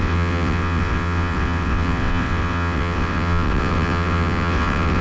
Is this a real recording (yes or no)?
no